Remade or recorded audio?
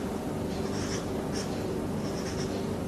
recorded